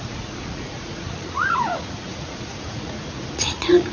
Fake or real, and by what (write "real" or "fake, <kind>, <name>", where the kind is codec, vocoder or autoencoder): fake, vocoder, Vocos